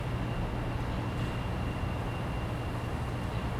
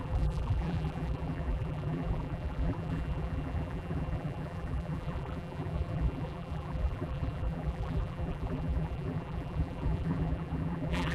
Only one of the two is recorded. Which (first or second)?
first